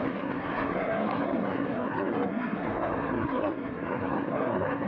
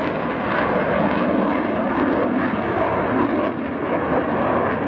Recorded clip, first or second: second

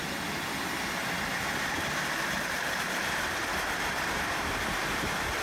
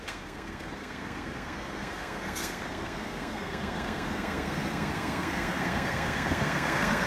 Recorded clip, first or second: first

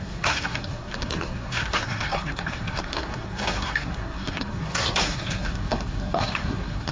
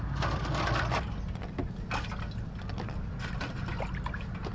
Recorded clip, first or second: second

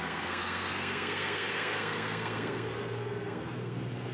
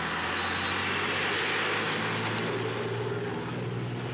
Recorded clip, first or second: second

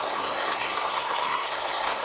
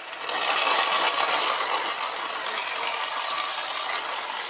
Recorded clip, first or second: second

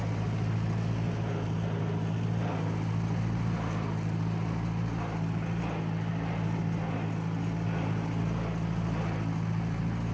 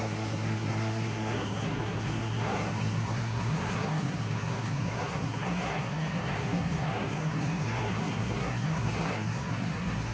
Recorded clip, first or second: first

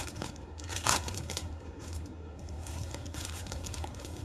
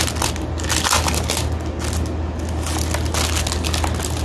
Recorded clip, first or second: second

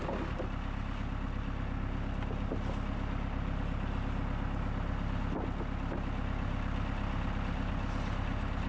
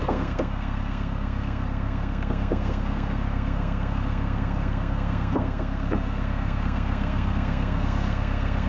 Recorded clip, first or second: first